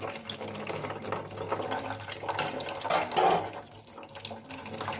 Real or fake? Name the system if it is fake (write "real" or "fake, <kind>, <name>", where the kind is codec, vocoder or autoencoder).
real